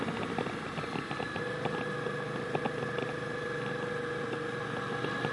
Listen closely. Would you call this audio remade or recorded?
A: recorded